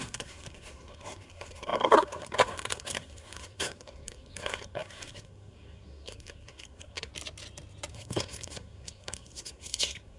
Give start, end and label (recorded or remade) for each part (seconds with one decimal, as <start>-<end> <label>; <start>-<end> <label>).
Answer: 0.0-7.1 remade; 7.1-7.9 recorded; 7.9-10.2 remade